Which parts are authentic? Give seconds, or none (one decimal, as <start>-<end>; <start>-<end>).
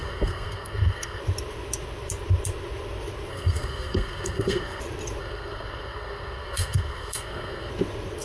1.2-3.3; 4.8-5.2; 7.7-8.2